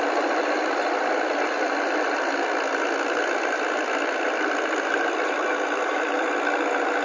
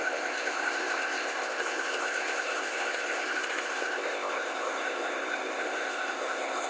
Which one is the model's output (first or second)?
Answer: second